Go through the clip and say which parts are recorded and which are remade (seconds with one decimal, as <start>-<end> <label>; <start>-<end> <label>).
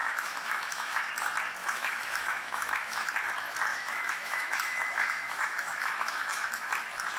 0.0-1.1 remade; 1.1-1.6 recorded; 1.6-3.1 remade; 3.1-3.7 recorded; 3.7-6.7 remade; 6.7-7.2 recorded